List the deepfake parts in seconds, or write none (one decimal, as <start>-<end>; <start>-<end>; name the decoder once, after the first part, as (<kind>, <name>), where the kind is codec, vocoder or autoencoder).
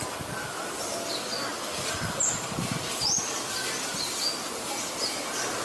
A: none